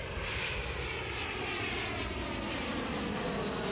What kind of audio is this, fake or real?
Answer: real